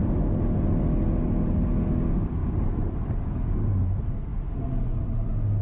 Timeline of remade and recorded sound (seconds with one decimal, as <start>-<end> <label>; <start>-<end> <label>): 0.0-5.6 recorded